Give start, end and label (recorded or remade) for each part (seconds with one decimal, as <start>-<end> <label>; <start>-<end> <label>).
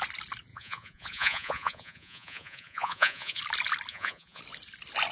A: 0.0-0.5 recorded; 0.5-3.4 remade; 3.4-3.9 recorded; 3.9-4.4 remade; 4.4-5.1 recorded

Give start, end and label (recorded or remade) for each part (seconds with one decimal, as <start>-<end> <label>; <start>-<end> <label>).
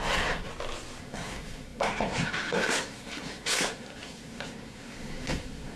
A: 0.0-0.5 remade; 0.5-1.0 recorded; 1.0-5.8 remade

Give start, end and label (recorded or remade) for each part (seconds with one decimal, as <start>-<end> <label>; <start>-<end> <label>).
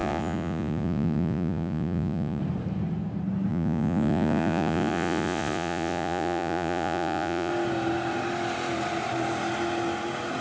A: 0.0-2.4 remade; 2.4-3.5 recorded; 3.5-7.5 remade; 7.5-10.4 recorded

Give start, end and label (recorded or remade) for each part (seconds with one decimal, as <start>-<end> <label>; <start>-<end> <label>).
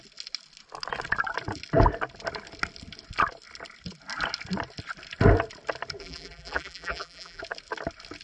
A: 0.0-6.0 recorded; 6.0-7.4 remade; 7.4-8.2 recorded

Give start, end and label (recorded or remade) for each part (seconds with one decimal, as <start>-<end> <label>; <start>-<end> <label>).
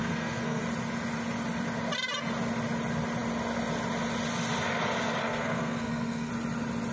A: 0.0-0.6 remade; 0.6-5.2 recorded; 5.2-6.3 remade; 6.3-6.9 recorded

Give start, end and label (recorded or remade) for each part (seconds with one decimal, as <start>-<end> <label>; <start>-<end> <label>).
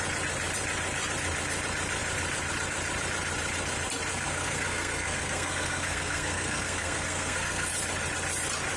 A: 0.0-4.1 recorded; 4.1-7.7 remade; 7.7-8.8 recorded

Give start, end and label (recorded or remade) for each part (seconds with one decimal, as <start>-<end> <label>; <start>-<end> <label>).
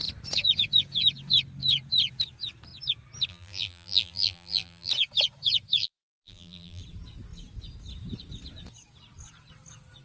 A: 0.0-3.3 recorded; 3.3-4.9 remade; 4.9-5.8 recorded; 5.8-6.8 remade; 6.8-10.0 recorded